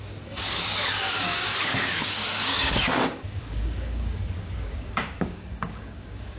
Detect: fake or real fake